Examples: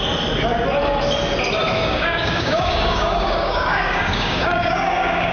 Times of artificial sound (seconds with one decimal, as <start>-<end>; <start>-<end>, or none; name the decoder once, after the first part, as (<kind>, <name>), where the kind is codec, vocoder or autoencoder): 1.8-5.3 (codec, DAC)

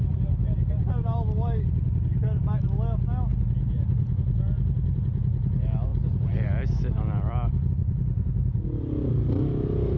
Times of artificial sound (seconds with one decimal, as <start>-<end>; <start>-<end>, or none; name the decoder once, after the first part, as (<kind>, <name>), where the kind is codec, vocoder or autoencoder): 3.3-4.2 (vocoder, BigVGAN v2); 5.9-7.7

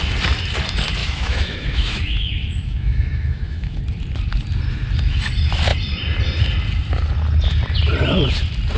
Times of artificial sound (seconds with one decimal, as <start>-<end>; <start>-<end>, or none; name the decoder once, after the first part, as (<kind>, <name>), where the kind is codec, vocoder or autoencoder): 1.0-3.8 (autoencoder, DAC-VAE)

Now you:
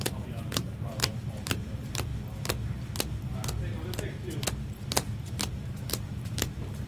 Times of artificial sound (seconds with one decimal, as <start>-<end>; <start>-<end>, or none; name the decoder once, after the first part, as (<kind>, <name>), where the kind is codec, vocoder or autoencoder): 0.0-2.1 (vocoder, BigVGAN v2); 5.2-6.9

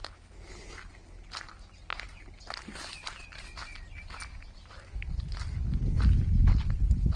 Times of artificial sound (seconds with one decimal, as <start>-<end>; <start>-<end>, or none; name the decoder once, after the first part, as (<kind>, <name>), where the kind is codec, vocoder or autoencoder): 0.0-0.5 (autoencoder, DAC-VAE)

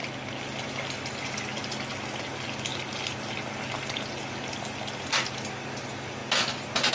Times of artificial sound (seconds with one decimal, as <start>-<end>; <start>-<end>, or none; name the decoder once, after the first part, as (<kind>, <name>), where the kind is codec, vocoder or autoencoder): none